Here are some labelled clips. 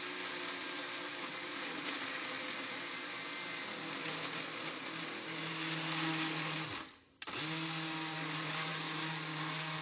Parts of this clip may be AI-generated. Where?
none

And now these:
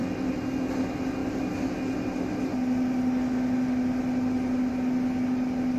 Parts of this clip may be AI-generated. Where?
none

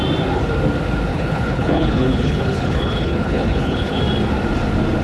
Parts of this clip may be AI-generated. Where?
1.1-4.0

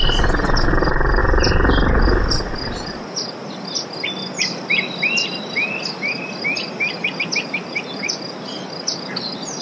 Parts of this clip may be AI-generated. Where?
none